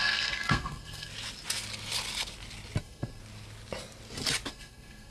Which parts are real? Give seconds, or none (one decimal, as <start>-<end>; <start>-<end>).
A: 1.1-2.8; 3.2-4.5